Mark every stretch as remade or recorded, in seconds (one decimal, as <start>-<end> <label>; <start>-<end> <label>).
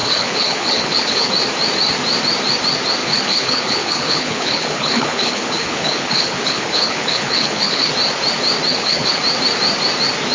0.0-1.3 remade; 1.3-3.0 recorded; 3.0-7.9 remade; 7.9-8.7 recorded; 8.7-9.2 remade; 9.2-10.3 recorded